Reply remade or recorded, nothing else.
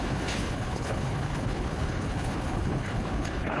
remade